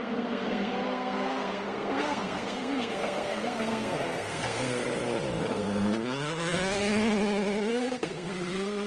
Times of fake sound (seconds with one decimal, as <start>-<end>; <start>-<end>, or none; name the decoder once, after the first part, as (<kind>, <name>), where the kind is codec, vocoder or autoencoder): 0.0-4.8 (codec, SNAC); 5.5-6.8; 7.7-8.9